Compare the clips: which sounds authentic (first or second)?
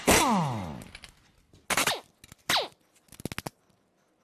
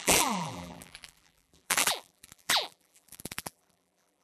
first